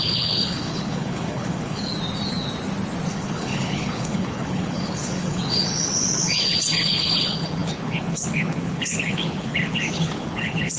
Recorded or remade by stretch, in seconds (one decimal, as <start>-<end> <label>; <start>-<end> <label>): 0.0-1.9 remade; 1.9-3.1 recorded; 3.1-10.8 remade